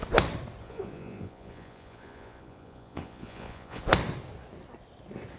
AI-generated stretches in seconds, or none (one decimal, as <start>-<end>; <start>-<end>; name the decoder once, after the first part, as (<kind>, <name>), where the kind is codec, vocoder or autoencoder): 0.6-3.8 (vocoder, Vocos)